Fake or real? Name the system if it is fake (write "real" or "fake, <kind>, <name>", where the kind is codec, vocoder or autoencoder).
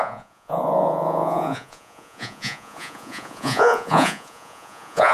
fake, vocoder, Vocos